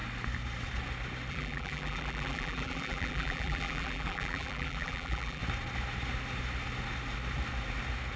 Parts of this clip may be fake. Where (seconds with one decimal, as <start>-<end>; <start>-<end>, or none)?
1.3-5.4